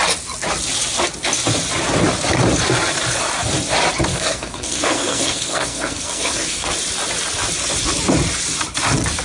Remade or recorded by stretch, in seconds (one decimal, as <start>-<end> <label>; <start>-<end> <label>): 0.0-4.1 recorded; 4.1-6.7 remade; 6.7-9.2 recorded

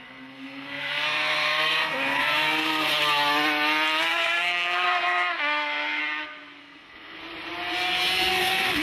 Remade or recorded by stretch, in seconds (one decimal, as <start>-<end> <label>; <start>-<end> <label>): 0.0-2.9 remade; 2.9-4.0 recorded; 4.0-6.0 remade; 6.0-6.6 recorded; 6.6-7.2 remade; 7.2-8.3 recorded; 8.3-8.8 remade

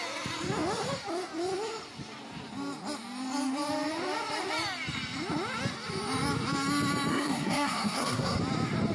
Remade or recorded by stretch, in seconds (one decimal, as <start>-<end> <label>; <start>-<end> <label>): 0.0-7.1 recorded; 7.1-8.4 remade; 8.4-8.9 recorded

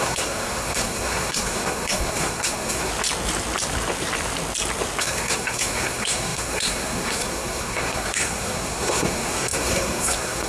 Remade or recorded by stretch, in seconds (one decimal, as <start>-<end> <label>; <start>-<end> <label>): 0.0-2.9 remade; 2.9-5.0 recorded; 5.0-10.5 remade

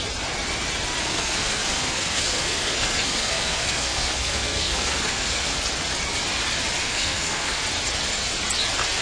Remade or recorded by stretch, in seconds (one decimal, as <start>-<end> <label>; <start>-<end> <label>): 0.0-1.0 recorded; 1.0-5.6 remade; 5.6-6.8 recorded; 6.8-7.6 remade; 7.6-9.0 recorded

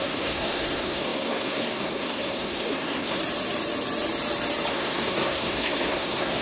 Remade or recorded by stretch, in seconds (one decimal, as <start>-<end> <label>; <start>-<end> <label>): 0.0-3.2 remade; 3.2-4.7 recorded; 4.7-6.4 remade

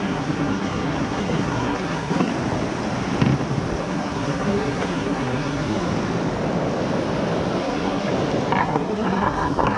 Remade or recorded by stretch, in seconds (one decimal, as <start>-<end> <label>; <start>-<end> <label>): 0.0-2.3 remade; 2.3-3.8 recorded; 3.8-5.9 remade; 5.9-7.6 recorded; 7.6-8.1 remade; 8.1-8.6 recorded; 8.6-9.8 remade